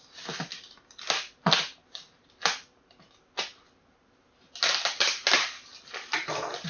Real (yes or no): yes